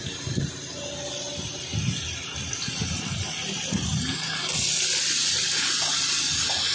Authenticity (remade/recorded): recorded